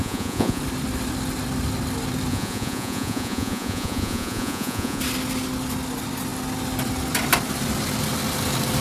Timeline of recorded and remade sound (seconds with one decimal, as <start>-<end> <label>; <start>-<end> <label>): 0.0-0.6 remade; 0.6-2.3 recorded; 2.3-5.0 remade; 5.0-8.8 recorded